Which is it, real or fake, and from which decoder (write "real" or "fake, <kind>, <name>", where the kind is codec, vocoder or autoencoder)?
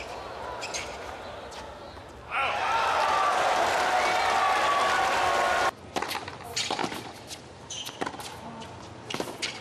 real